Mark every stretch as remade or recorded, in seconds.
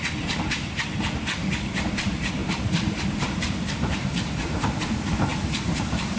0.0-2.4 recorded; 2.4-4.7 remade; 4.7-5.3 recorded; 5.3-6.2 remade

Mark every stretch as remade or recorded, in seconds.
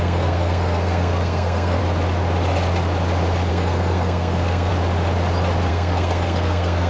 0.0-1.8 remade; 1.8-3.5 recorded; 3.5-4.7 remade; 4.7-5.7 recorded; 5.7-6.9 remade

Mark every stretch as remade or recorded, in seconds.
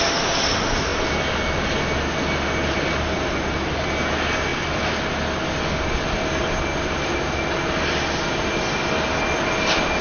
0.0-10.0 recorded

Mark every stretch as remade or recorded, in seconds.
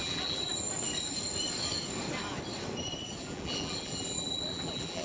0.0-0.5 remade; 0.5-3.2 recorded; 3.2-5.0 remade